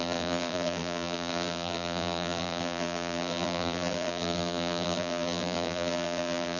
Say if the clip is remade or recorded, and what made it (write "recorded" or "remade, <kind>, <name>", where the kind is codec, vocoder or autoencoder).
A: remade, vocoder, BigVGAN v2